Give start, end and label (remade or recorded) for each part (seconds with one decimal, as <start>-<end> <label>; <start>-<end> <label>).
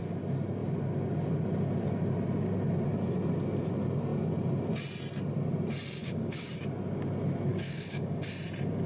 0.0-6.0 recorded; 6.0-6.5 remade; 6.5-7.5 recorded; 7.5-8.2 remade; 8.2-8.9 recorded